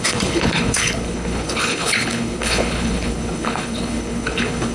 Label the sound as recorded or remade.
remade